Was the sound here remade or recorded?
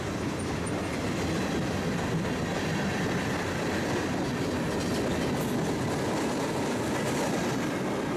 recorded